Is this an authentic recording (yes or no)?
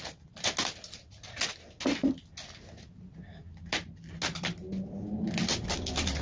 yes